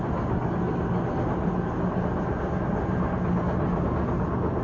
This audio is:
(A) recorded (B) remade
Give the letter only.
A